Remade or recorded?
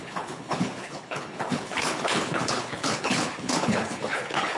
remade